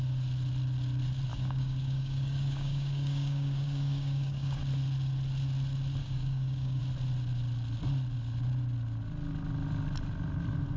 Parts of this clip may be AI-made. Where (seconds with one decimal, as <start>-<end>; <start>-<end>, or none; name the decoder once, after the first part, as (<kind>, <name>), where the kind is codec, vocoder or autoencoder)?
1.3-4.6 (codec, DAC); 6.0-6.8